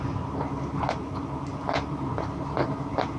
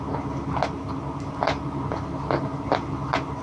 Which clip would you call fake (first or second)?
first